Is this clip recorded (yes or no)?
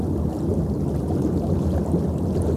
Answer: yes